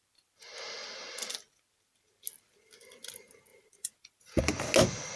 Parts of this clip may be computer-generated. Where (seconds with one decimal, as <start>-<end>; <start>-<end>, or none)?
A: 3.5-4.4